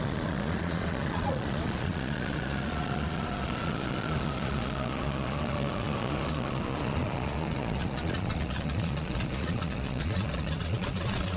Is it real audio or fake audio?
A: fake